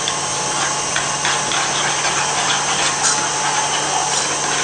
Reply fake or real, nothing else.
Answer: real